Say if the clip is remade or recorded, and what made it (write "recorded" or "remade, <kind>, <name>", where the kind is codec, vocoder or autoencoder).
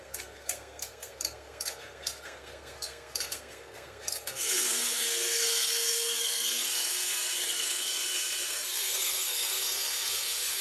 remade, codec, SNAC